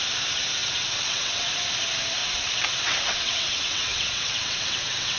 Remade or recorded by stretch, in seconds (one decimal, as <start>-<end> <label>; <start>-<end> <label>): 0.0-0.6 recorded; 0.6-1.5 remade; 1.5-2.2 recorded; 2.2-5.2 remade